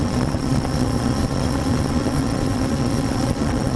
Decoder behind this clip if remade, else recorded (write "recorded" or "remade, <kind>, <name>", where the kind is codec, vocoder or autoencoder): remade, vocoder, Vocos